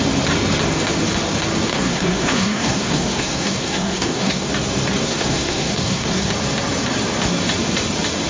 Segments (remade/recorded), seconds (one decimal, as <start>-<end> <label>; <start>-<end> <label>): 0.0-1.7 recorded; 1.7-4.5 remade; 4.5-5.0 recorded; 5.0-6.3 remade; 6.3-8.3 recorded